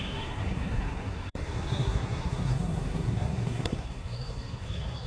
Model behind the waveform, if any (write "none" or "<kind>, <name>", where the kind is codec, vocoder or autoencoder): codec, SNAC